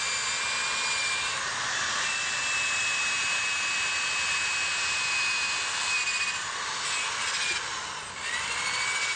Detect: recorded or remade recorded